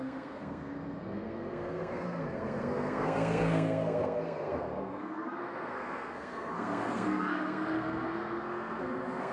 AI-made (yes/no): yes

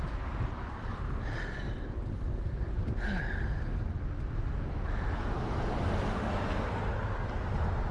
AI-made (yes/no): no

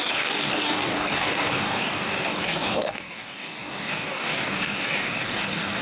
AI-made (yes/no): yes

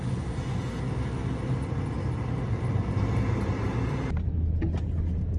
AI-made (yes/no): no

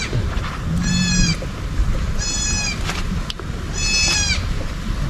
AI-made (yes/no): no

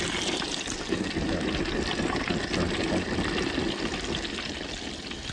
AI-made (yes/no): no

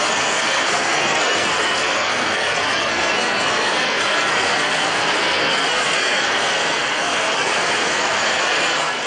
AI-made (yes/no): yes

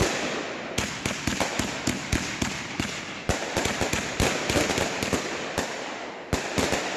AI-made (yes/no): no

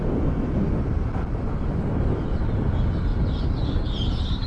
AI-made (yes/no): no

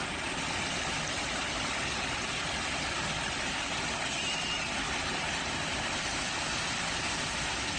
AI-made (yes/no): no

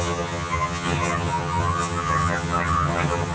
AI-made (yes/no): yes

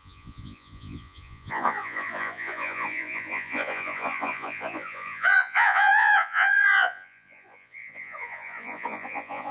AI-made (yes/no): yes